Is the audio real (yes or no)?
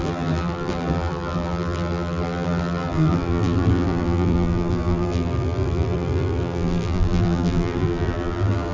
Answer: no